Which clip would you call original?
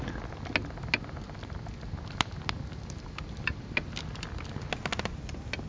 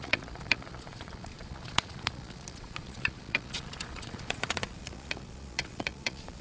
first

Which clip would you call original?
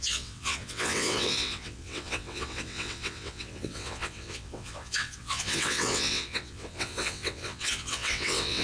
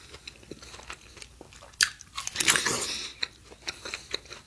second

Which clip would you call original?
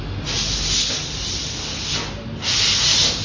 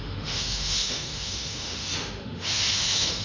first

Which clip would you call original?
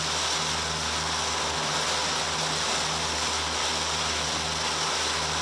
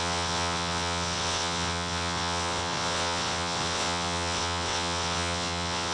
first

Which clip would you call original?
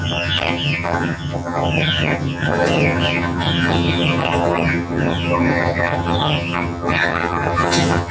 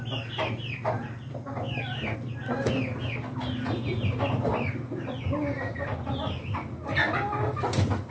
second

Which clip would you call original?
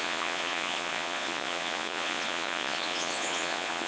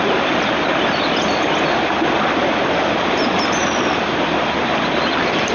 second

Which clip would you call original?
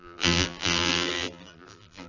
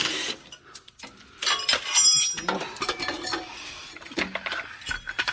second